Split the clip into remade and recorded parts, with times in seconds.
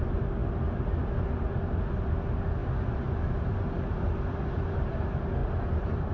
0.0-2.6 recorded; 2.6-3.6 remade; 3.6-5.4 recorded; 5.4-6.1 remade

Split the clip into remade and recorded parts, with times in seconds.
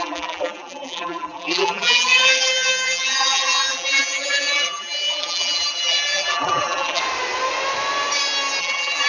0.0-7.0 remade; 7.0-8.6 recorded; 8.6-9.1 remade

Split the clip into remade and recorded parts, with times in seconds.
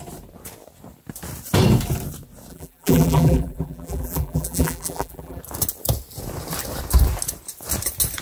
0.0-2.5 recorded; 2.5-5.4 remade; 5.4-8.2 recorded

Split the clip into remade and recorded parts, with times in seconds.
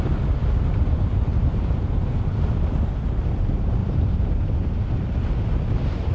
0.0-1.3 recorded; 1.3-2.5 remade; 2.5-3.8 recorded; 3.8-4.6 remade; 4.6-6.1 recorded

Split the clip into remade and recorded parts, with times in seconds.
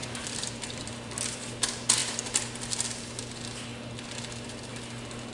0.0-1.2 remade; 1.2-5.3 recorded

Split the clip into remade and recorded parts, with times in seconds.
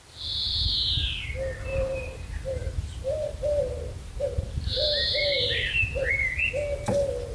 0.0-1.7 recorded; 1.7-6.1 remade; 6.1-7.3 recorded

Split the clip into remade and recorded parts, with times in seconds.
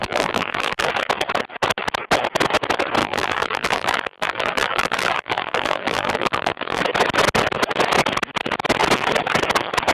0.0-0.9 remade; 0.9-3.0 recorded; 3.0-6.8 remade; 6.8-9.9 recorded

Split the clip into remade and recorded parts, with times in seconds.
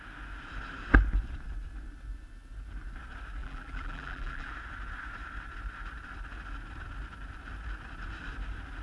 0.0-3.4 recorded; 3.4-4.5 remade; 4.5-8.8 recorded